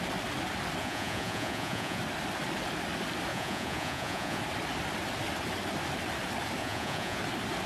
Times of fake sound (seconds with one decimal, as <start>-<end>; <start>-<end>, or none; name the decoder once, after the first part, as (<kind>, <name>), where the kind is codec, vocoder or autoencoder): 0.8-2.0 (vocoder, Vocos); 3.3-4.4; 6.6-7.2